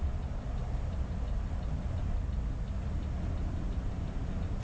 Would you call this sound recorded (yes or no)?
yes